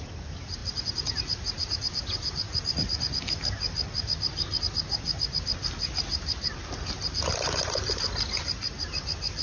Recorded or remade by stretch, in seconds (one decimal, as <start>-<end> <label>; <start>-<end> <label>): 0.0-9.4 recorded